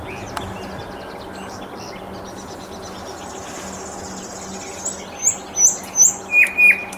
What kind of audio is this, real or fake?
real